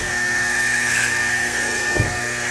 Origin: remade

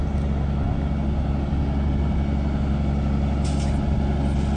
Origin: recorded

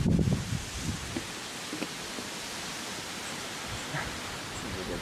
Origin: recorded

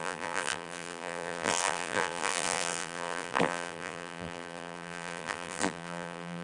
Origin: remade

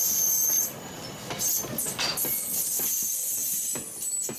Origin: recorded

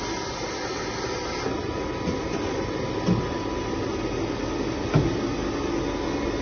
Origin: recorded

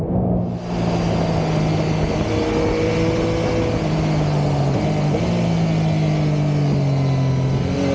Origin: recorded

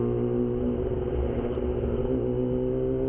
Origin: recorded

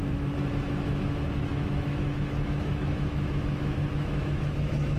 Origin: remade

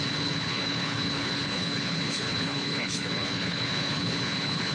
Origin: remade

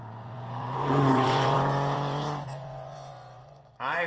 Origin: remade